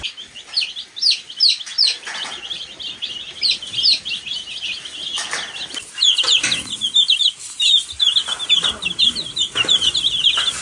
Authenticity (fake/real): real